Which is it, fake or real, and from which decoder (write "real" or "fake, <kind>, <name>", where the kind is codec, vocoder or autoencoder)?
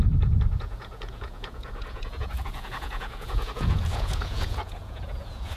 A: fake, vocoder, Vocos